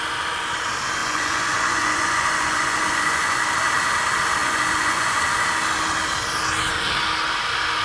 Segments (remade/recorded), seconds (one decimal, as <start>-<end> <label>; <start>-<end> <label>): 0.0-1.0 recorded; 1.0-3.4 remade; 3.4-4.4 recorded; 4.4-5.2 remade; 5.2-7.8 recorded